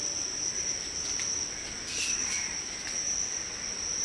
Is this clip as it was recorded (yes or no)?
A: yes